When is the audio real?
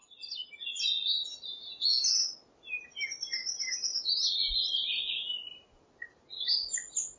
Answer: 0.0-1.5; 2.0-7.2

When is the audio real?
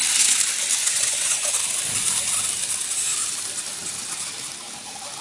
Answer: 0.0-0.8; 1.5-5.2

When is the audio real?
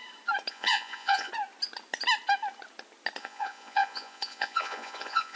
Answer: 0.0-0.5; 1.3-3.2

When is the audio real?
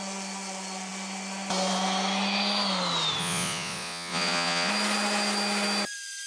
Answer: 0.0-3.2; 4.7-6.3